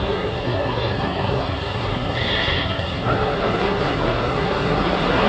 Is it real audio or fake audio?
fake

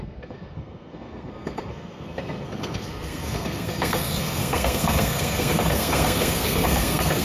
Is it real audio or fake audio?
fake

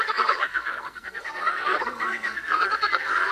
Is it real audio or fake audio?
fake